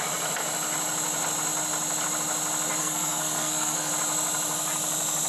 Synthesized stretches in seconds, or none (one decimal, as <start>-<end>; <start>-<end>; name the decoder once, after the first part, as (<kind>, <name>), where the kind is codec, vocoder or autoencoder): 2.8-3.9 (codec, SNAC)